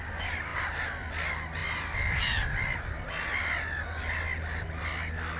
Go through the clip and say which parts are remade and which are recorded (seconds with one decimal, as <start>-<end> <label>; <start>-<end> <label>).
0.0-5.4 recorded